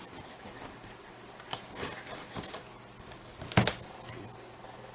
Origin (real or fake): real